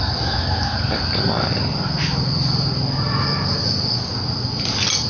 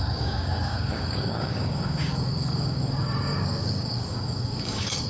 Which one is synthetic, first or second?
second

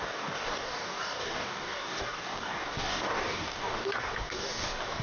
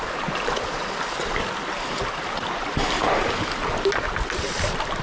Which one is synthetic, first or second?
first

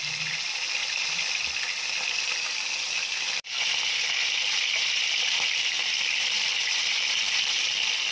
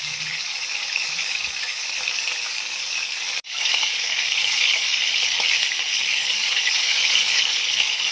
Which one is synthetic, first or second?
second